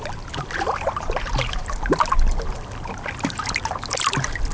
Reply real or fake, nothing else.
real